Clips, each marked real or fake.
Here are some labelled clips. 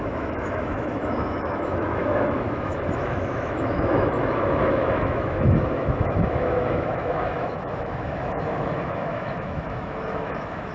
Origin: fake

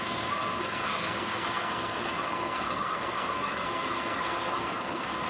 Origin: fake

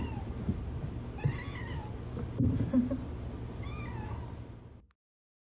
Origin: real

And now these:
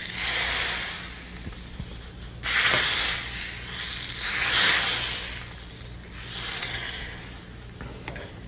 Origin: real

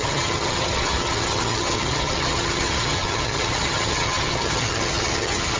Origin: fake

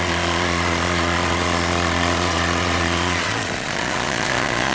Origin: fake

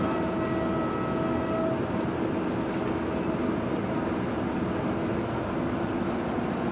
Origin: real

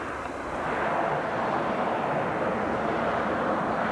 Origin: real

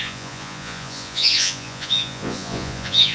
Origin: fake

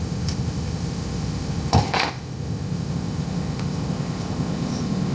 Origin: fake